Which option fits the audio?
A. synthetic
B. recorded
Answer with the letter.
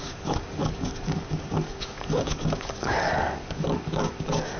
A